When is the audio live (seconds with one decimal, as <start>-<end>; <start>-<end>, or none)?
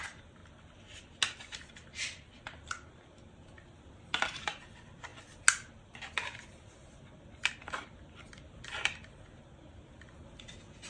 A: 0.4-1.3; 5.1-7.5